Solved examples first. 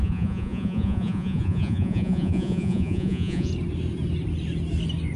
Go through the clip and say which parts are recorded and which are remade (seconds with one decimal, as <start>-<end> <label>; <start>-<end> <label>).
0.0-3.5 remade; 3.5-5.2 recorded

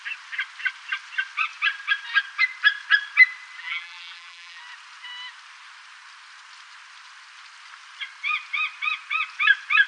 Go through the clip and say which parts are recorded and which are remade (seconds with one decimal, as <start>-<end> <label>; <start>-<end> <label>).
0.0-3.6 recorded; 3.6-4.6 remade; 4.6-9.9 recorded

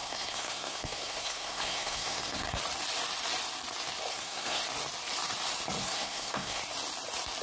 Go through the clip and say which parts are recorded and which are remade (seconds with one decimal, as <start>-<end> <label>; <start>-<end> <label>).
0.0-2.6 remade; 2.6-4.1 recorded; 4.1-4.6 remade; 4.6-5.8 recorded; 5.8-6.6 remade; 6.6-7.4 recorded

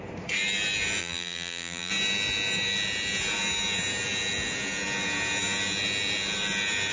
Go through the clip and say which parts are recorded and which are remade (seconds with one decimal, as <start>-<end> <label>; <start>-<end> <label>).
0.0-1.0 recorded; 1.0-1.9 remade; 1.9-6.9 recorded

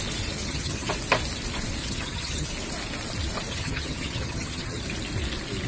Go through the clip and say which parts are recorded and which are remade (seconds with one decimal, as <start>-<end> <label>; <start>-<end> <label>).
0.0-0.4 recorded; 0.4-0.9 remade; 0.9-1.8 recorded; 1.8-2.5 remade; 2.5-3.5 recorded; 3.5-4.8 remade; 4.8-5.7 recorded